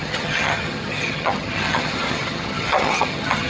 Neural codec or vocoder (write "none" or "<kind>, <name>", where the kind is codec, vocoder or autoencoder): vocoder, HiFi-GAN